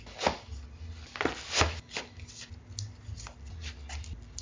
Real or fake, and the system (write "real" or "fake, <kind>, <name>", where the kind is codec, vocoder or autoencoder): real